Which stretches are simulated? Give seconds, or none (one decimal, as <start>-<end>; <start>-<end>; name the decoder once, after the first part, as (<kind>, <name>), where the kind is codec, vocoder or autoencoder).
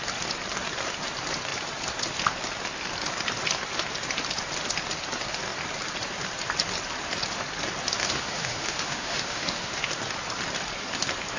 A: 8.0-9.8 (autoencoder, DAC-VAE)